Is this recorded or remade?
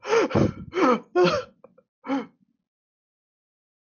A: recorded